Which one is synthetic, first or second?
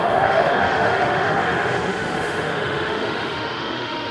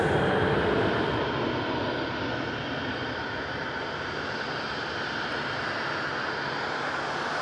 first